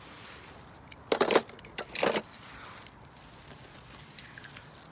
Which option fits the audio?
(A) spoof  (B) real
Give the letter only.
B